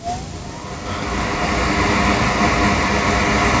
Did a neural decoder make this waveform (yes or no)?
no